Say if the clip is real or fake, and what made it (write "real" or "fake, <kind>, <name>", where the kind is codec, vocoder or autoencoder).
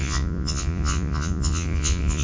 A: fake, vocoder, Vocos